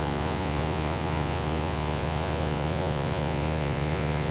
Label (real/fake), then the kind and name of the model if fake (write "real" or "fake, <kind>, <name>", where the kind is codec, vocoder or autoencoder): fake, vocoder, Vocos